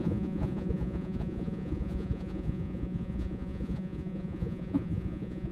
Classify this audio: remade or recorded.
remade